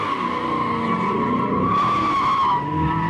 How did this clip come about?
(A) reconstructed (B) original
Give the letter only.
B